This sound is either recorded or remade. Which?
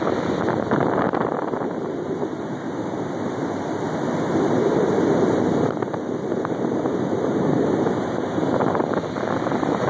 recorded